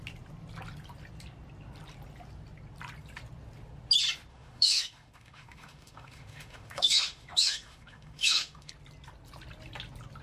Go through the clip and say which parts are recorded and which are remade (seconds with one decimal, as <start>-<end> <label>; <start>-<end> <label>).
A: 0.0-4.3 recorded; 4.3-8.7 remade; 8.7-10.2 recorded